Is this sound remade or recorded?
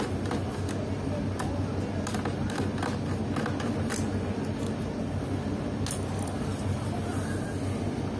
recorded